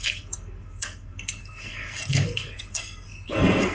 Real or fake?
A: fake